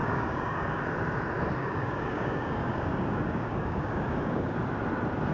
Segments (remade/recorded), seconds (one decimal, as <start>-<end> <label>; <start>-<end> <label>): 0.0-0.8 remade; 0.8-1.6 recorded; 1.6-4.6 remade; 4.6-5.3 recorded